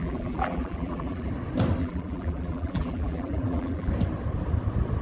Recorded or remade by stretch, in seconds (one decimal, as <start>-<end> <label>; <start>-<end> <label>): 0.0-1.3 remade; 1.3-1.8 recorded; 1.8-3.9 remade; 3.9-5.0 recorded